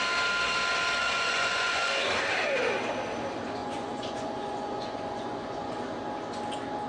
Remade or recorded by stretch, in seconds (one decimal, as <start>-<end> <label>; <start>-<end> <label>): 0.0-1.0 recorded; 1.0-1.9 remade; 1.9-3.6 recorded; 3.6-5.7 remade; 5.7-6.9 recorded